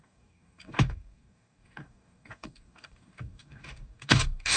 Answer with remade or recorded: remade